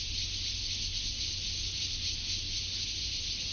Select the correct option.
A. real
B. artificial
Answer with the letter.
A